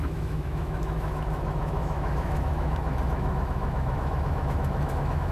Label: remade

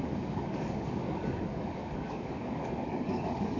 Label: remade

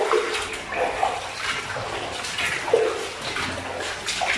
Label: recorded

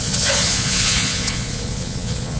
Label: remade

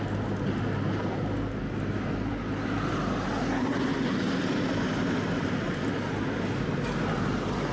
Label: recorded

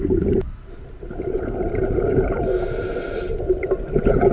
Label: recorded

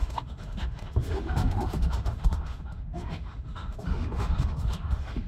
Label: remade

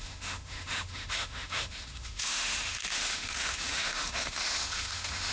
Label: remade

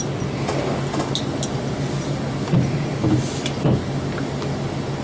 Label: recorded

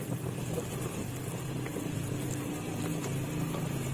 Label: recorded